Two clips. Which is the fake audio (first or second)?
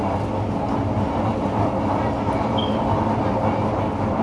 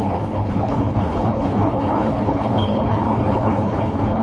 second